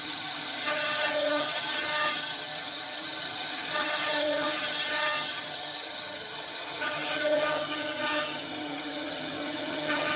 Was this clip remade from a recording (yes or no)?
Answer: yes